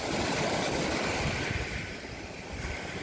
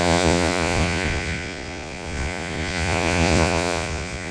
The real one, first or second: first